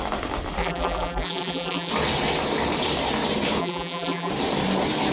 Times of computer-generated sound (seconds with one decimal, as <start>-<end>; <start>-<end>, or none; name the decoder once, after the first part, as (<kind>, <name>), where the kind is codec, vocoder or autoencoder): 0.6-1.9 (vocoder, BigVGAN v2); 3.6-4.3